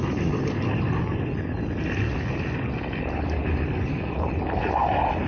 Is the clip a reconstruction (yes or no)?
no